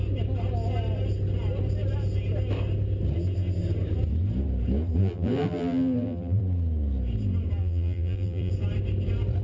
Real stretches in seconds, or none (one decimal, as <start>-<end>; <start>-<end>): 0.0-5.0; 6.4-7.6; 8.5-9.4